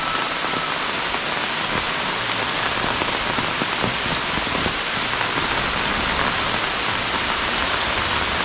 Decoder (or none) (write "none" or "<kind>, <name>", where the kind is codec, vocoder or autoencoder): none